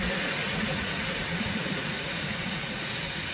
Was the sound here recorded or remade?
remade